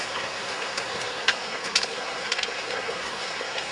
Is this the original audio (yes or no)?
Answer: no